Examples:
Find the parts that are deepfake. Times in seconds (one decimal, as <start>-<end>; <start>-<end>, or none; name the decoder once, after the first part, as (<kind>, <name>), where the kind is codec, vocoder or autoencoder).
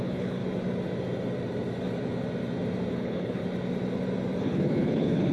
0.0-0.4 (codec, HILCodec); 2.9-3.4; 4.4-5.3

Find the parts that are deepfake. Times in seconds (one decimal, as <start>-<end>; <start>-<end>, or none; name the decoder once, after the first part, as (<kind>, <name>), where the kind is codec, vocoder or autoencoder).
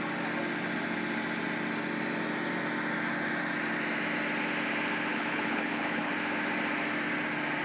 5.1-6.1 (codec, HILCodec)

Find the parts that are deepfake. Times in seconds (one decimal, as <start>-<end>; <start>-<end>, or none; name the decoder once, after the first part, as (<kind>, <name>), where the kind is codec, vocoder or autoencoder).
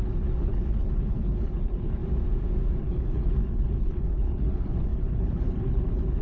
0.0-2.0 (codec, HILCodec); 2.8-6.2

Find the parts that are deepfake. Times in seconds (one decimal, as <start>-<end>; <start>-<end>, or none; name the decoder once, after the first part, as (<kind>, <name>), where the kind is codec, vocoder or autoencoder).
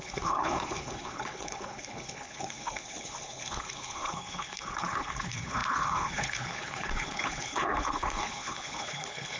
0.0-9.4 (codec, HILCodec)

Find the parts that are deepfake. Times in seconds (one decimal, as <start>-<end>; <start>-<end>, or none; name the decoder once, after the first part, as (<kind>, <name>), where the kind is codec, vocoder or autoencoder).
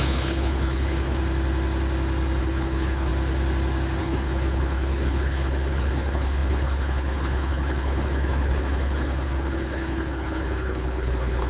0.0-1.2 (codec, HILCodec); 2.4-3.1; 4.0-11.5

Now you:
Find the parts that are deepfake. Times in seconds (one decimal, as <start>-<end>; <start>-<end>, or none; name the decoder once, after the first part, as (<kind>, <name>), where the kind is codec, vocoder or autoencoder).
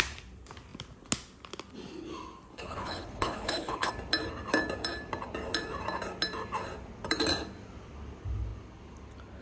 2.5-3.9 (codec, HILCodec)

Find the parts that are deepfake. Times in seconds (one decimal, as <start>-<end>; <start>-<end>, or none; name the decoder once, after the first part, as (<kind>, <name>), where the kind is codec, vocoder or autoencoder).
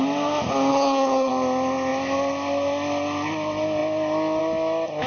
0.7-1.3 (codec, HILCodec)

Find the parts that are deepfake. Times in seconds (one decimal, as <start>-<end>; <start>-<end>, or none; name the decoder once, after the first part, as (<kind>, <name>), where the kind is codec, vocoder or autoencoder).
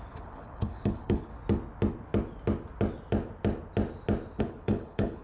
0.0-1.3 (codec, HILCodec); 4.4-5.2